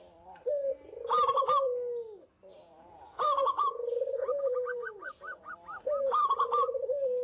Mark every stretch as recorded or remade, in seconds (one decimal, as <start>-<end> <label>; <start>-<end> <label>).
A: 0.0-2.5 recorded; 2.5-5.5 remade; 5.5-7.2 recorded